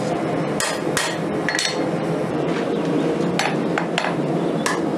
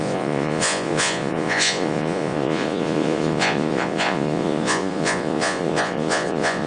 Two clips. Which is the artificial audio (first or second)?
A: second